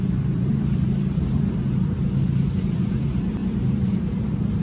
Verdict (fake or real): fake